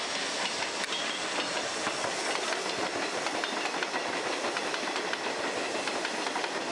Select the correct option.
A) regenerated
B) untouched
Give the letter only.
B